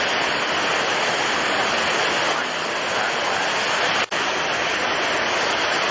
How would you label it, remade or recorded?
recorded